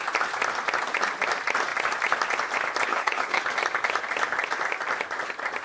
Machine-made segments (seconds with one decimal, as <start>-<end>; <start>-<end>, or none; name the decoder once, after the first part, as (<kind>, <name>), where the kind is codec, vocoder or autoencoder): 2.9-3.4 (codec, HILCodec)